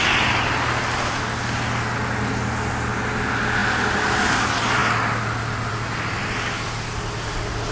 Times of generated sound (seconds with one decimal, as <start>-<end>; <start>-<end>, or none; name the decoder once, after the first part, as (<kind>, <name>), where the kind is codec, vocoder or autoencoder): none